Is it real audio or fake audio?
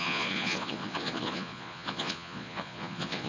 fake